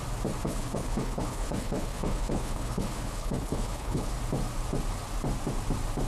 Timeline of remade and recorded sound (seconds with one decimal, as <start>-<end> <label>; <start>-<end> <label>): 0.0-0.4 recorded; 0.4-4.1 remade; 4.1-6.1 recorded